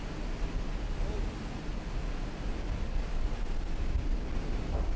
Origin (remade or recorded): recorded